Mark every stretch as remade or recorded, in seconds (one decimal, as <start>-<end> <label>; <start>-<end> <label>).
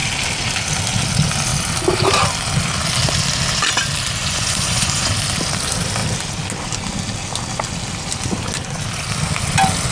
0.0-4.2 recorded; 4.2-5.1 remade; 5.1-9.9 recorded